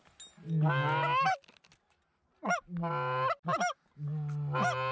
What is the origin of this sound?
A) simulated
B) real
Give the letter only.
B